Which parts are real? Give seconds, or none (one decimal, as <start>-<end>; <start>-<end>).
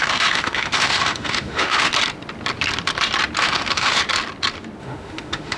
1.9-3.4; 4.0-4.8